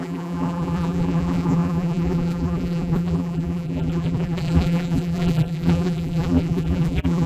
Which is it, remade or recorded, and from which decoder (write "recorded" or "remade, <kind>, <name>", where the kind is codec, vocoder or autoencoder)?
remade, vocoder, BigVGAN v2